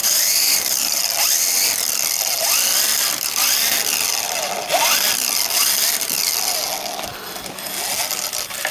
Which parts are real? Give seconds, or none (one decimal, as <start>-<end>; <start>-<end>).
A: 1.0-8.7

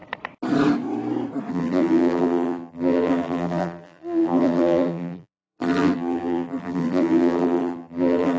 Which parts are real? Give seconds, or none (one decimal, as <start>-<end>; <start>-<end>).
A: 0.0-1.5

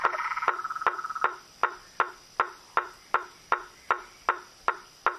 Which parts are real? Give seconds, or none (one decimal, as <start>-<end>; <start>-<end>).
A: 0.0-5.2

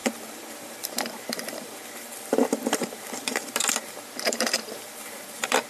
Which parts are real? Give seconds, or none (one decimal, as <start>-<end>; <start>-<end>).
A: none

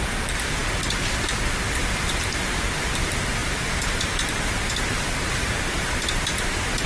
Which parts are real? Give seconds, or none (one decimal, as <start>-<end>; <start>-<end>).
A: 0.6-1.8

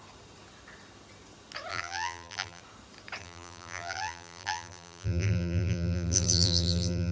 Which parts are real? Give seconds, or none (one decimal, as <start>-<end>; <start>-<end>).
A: 0.0-1.7; 2.6-3.2